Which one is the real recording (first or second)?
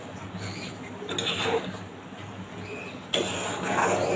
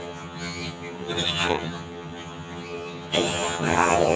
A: first